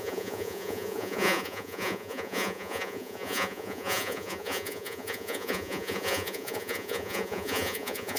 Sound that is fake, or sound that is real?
fake